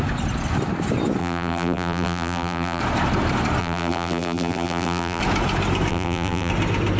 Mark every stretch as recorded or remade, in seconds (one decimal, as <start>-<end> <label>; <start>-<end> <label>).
0.0-1.2 recorded; 1.2-2.8 remade; 2.8-3.6 recorded; 3.6-5.2 remade; 5.2-5.9 recorded; 5.9-6.5 remade; 6.5-7.0 recorded

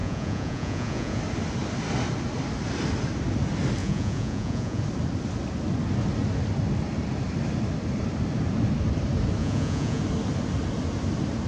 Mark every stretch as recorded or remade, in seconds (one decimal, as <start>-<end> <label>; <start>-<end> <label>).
0.0-1.2 remade; 1.2-3.8 recorded; 3.8-4.8 remade; 4.8-9.4 recorded; 9.4-10.0 remade; 10.0-11.5 recorded

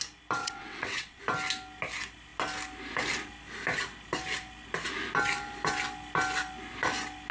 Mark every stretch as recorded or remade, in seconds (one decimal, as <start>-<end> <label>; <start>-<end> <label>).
0.0-0.4 recorded; 0.4-1.2 remade; 1.2-7.3 recorded

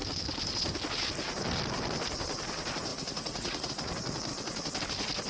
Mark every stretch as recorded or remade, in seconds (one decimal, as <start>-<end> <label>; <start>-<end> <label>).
0.0-2.9 recorded; 2.9-3.7 remade; 3.7-5.3 recorded

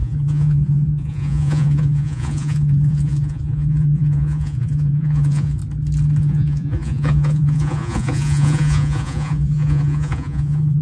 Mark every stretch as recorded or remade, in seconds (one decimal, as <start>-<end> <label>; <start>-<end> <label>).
0.0-5.6 remade; 5.6-6.2 recorded; 6.2-10.8 remade

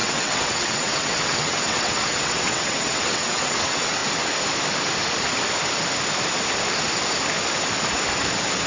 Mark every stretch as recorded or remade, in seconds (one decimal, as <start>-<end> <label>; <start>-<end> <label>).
0.0-4.0 remade; 4.0-8.7 recorded

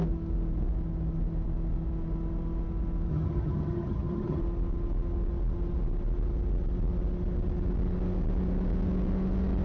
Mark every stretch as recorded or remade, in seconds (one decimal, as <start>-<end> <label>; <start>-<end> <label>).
0.0-3.1 recorded; 3.1-4.4 remade; 4.4-9.6 recorded